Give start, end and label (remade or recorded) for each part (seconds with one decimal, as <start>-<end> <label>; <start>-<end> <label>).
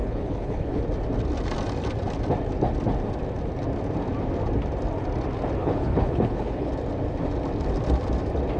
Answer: 0.0-0.8 remade; 0.8-5.6 recorded; 5.6-6.7 remade; 6.7-8.6 recorded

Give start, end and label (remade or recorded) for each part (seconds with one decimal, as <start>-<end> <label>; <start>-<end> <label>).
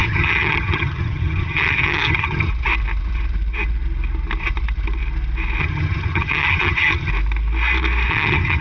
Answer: 0.0-2.5 remade; 2.5-5.6 recorded; 5.6-7.1 remade; 7.1-8.1 recorded; 8.1-8.6 remade